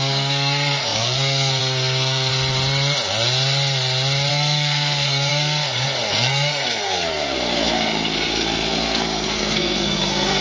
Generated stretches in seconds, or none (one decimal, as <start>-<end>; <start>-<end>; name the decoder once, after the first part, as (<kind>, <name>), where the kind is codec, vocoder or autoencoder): 0.0-2.3 (codec, SNAC); 4.3-10.4